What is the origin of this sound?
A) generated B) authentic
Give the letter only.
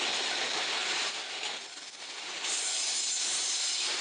B